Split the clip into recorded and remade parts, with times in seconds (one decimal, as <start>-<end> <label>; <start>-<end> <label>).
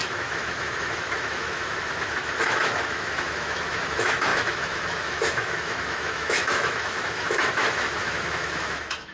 0.0-9.1 remade